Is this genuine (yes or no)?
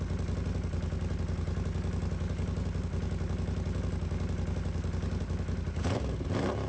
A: yes